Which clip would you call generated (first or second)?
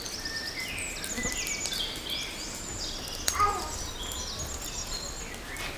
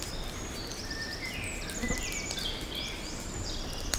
second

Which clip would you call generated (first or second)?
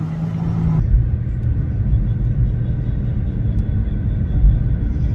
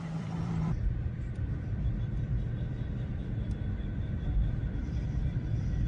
second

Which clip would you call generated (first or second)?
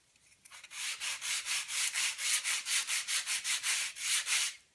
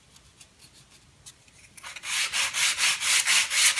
first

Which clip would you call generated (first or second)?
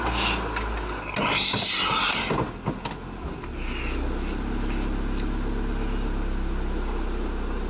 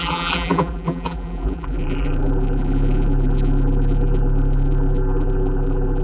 second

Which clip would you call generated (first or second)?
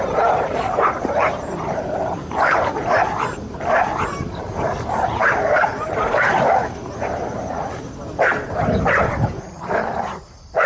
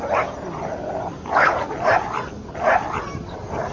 first